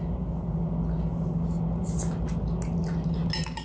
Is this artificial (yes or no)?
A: no